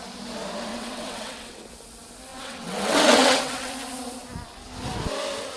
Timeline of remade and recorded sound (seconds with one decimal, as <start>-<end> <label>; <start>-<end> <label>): 0.0-0.7 recorded; 0.7-1.7 remade; 1.7-2.3 recorded; 2.3-3.7 remade; 3.7-5.6 recorded